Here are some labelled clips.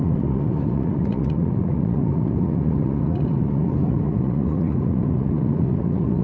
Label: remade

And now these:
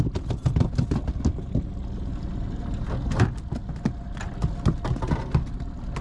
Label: recorded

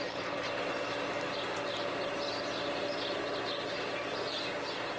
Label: recorded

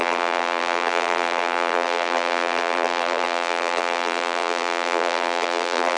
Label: remade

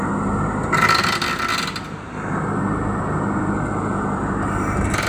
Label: recorded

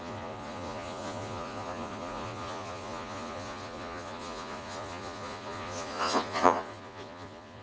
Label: remade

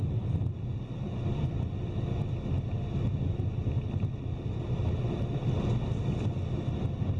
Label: recorded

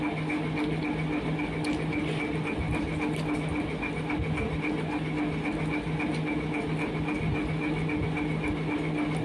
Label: recorded